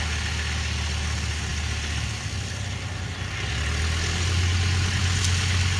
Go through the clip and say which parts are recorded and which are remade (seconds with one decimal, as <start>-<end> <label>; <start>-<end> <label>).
0.0-5.8 recorded